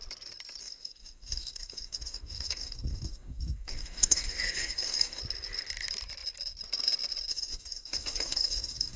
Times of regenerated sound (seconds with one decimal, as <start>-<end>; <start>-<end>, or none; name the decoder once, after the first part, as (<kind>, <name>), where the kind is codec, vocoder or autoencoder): 0.6-5.2 (codec, DAC); 7.3-9.0

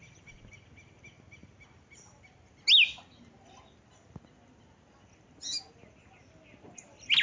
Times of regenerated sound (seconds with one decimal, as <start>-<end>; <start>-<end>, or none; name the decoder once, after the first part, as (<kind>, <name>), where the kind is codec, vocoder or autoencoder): none